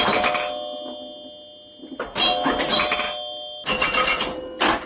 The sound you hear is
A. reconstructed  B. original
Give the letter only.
B